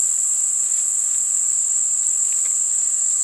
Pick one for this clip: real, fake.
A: real